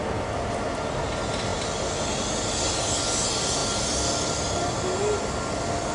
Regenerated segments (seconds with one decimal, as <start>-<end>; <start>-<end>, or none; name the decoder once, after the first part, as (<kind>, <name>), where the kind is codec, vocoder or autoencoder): none